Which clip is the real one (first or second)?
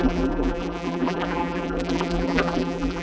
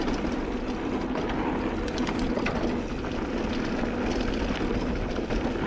second